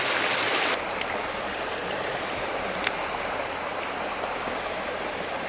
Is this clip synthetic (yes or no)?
no